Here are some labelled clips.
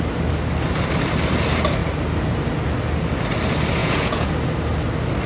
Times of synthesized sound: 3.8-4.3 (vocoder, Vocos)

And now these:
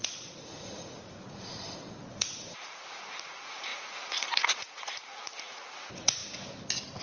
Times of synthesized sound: 0.0-6.2 (vocoder, Vocos)

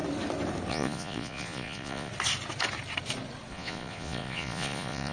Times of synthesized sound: 0.7-2.1 (vocoder, Vocos); 3.5-5.1

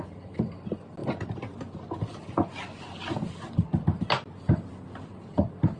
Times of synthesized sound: none